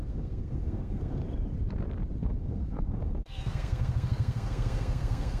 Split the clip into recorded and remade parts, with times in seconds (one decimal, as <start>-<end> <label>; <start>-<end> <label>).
0.0-1.2 remade; 1.2-2.2 recorded; 2.2-5.4 remade